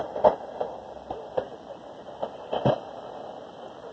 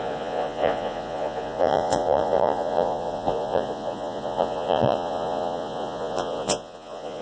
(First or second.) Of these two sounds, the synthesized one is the second